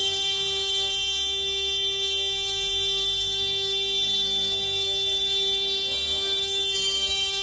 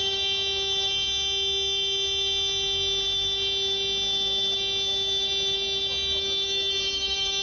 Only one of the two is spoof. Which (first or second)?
first